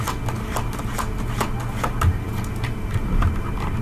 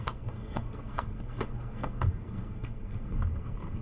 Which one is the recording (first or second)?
first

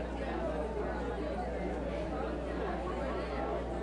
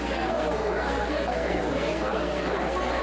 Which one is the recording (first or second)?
first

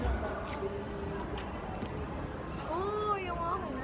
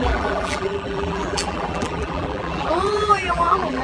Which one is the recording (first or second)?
first